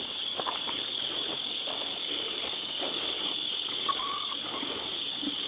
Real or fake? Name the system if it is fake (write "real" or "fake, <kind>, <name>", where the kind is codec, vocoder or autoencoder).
fake, codec, DAC